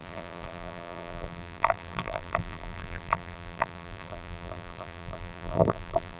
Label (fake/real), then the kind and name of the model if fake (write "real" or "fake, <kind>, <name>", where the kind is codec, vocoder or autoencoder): fake, vocoder, BigVGAN v2